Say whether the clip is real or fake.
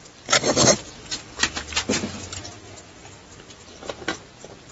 real